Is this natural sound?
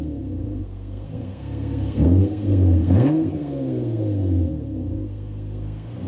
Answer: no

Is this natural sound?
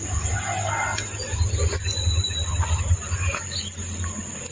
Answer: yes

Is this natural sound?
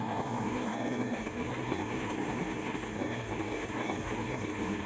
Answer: no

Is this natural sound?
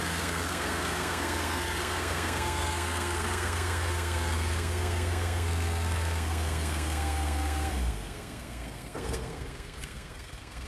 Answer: no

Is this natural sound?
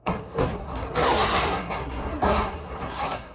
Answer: no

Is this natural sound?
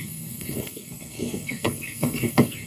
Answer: no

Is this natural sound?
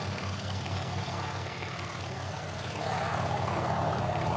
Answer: no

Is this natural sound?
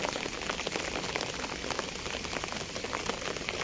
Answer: yes